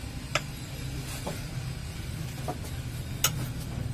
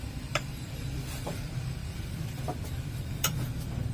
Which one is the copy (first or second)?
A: second